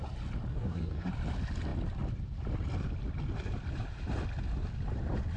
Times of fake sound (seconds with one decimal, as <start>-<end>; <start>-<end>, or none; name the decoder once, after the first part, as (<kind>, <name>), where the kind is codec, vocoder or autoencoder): 0.5-1.1 (codec, SNAC)